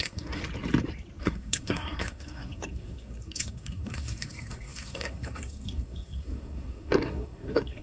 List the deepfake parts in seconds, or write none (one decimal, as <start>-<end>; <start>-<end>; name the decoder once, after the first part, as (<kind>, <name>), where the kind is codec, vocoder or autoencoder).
0.0-0.4 (codec, SNAC); 1.2-7.8